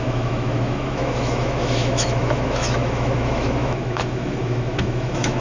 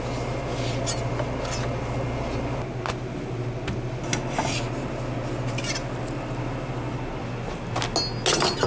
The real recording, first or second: second